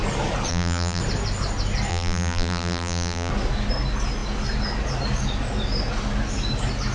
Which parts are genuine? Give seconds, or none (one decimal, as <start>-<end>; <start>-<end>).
0.0-0.5; 1.0-1.9; 3.3-6.9